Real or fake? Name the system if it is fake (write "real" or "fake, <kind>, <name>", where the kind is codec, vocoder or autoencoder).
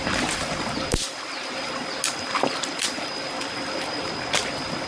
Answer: real